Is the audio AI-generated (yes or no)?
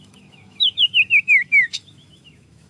yes